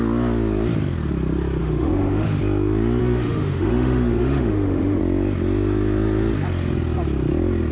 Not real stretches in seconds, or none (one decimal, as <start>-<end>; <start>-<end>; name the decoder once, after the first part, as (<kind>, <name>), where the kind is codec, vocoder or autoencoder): 1.6-2.4 (autoencoder, DAC-VAE); 3.0-5.0